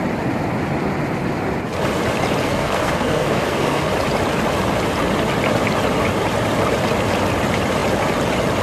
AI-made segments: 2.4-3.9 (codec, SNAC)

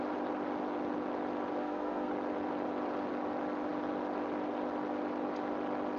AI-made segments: 1.6-2.1 (codec, SNAC)